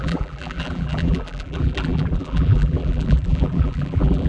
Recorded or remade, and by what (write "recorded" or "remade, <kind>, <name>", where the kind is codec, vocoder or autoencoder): remade, vocoder, BigVGAN v2